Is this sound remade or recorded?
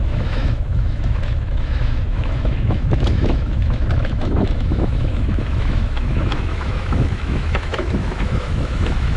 remade